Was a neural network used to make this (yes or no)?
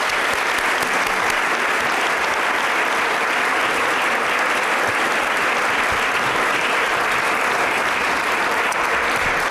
no